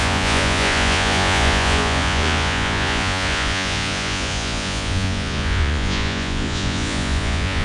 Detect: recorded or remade remade